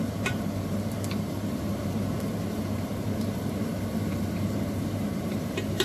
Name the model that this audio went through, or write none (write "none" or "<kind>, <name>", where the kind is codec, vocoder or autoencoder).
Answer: vocoder, BigVGAN v2